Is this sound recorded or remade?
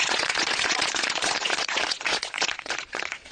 remade